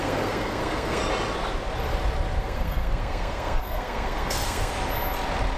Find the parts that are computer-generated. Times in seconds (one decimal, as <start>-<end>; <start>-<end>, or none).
0.0-1.0; 2.4-4.7